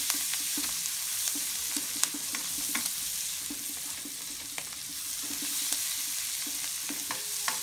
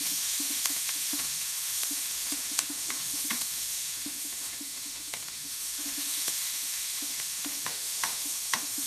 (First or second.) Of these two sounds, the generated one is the second